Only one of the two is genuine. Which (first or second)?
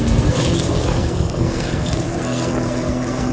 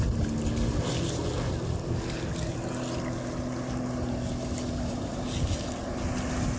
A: second